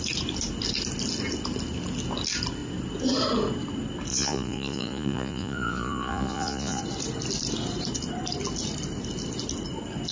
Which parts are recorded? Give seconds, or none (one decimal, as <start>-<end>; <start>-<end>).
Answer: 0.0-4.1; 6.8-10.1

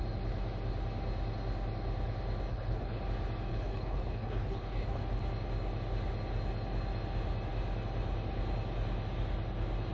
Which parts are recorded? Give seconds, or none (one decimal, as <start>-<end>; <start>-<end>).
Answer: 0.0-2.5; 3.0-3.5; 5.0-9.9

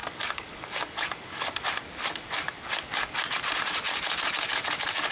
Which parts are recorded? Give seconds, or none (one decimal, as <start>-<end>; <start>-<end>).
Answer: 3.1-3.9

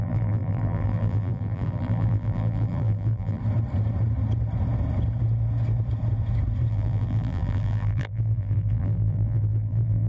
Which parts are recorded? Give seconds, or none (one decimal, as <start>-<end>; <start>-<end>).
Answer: 3.4-6.7

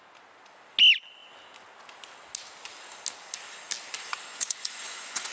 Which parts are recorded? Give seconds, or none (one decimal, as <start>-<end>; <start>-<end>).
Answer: 0.0-4.3